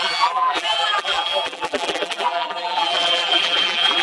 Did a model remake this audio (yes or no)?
yes